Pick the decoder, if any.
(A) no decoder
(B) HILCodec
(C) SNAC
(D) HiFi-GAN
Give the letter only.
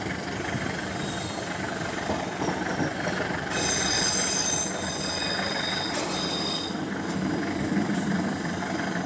A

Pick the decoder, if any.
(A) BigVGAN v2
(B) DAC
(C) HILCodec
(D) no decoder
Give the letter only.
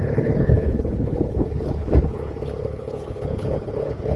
C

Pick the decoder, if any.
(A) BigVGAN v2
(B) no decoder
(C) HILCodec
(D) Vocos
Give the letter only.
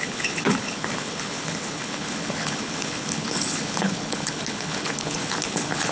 C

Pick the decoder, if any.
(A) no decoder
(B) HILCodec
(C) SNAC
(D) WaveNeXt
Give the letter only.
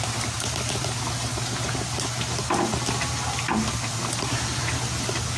A